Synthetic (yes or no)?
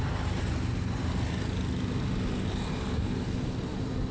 no